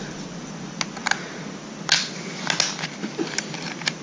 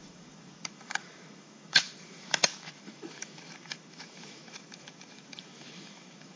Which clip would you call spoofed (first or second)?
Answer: second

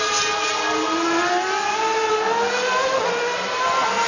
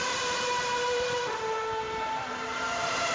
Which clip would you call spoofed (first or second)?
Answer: second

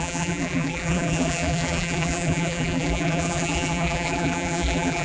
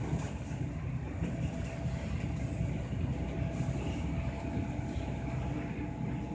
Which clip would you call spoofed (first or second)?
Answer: first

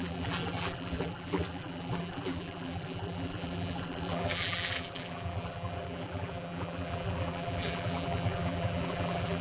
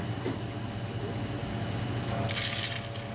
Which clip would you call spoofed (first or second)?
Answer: first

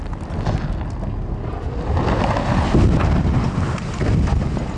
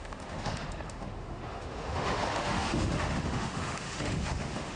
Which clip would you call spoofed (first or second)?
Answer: second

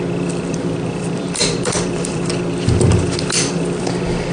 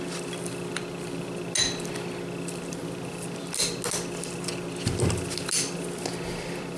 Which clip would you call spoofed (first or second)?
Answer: first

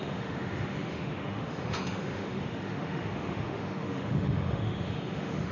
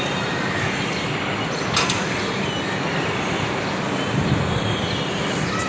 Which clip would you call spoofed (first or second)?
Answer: first